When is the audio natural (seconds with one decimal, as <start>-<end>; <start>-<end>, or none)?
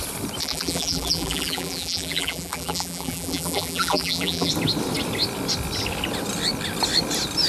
0.0-0.4; 4.5-7.5